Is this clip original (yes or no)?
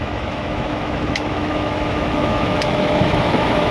no